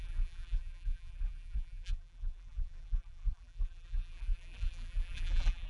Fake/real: fake